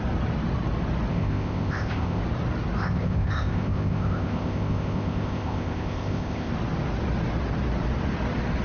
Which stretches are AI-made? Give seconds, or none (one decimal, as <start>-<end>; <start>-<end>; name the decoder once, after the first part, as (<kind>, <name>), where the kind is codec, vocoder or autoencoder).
1.1-2.2 (codec, ZipCodec); 2.8-6.5